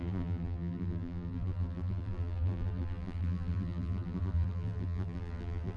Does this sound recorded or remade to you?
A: remade